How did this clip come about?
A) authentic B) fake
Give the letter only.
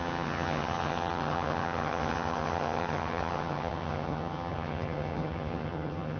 B